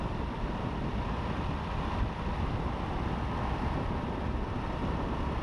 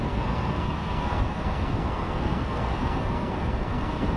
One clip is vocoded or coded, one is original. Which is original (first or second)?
first